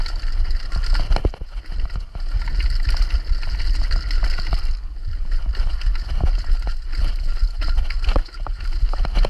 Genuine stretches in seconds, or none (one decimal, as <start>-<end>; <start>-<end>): 0.0-9.3